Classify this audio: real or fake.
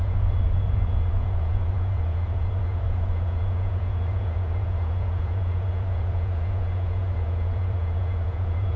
fake